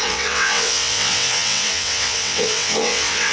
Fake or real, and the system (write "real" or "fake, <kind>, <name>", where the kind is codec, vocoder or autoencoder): fake, vocoder, WaveNeXt